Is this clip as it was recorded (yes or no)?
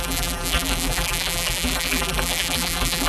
no